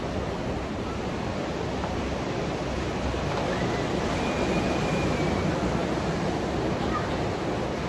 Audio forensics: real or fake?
real